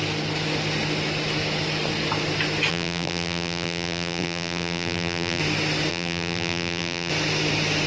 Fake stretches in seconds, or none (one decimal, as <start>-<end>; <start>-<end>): 2.7-5.4; 5.9-7.1